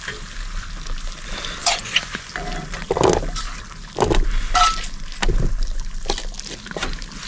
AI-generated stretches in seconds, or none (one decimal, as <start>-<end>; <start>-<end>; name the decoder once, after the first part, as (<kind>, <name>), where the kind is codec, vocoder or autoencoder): 1.6-2.3 (vocoder, Vocos)